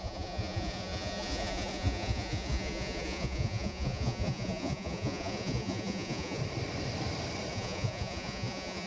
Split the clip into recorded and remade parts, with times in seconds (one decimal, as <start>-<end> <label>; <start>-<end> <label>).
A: 0.0-6.4 remade; 6.4-7.5 recorded; 7.5-8.9 remade